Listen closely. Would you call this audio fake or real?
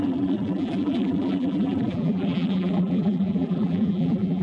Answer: fake